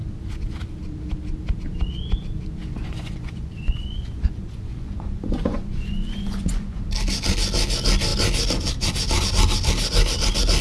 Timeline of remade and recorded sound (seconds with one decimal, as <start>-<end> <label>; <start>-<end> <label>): 0.0-2.6 recorded; 2.6-6.8 remade; 6.8-10.6 recorded